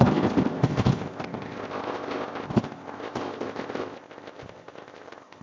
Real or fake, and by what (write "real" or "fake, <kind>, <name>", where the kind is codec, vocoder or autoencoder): fake, codec, ZipCodec